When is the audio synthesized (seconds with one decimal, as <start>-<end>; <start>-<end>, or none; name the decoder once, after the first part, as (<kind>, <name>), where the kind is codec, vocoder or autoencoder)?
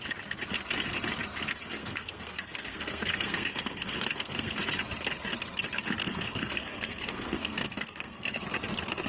1.8-4.6 (codec, SNAC); 6.0-8.4